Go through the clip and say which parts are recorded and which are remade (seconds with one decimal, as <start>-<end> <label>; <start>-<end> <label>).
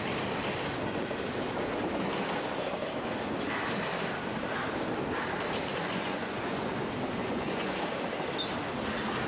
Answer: 0.0-5.8 recorded; 5.8-6.7 remade; 6.7-7.2 recorded; 7.2-7.8 remade; 7.8-9.3 recorded